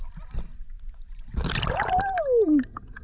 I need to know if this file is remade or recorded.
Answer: recorded